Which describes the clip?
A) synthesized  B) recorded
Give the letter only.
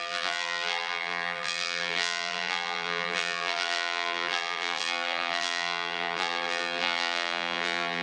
A